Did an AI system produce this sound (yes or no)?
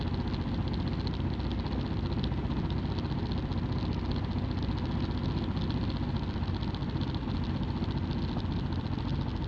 no